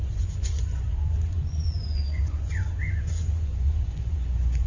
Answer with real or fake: fake